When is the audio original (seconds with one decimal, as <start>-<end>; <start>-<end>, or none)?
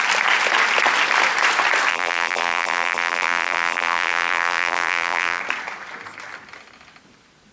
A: 0.0-1.9; 5.4-7.5